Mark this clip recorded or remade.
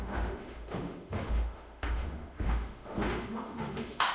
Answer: remade